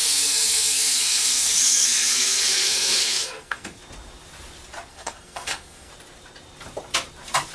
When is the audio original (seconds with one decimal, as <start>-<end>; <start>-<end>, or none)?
3.8-4.9; 5.9-7.5